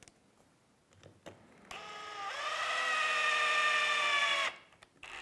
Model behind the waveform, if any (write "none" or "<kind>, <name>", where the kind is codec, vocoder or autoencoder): none